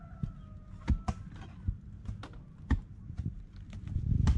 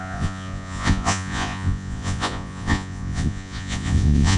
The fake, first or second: second